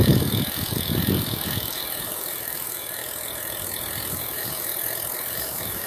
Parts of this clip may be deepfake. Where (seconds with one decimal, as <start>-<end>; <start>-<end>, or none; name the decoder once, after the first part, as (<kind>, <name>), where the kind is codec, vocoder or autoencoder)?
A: 0.0-3.0 (autoencoder, DAC-VAE); 4.1-4.7; 5.3-5.9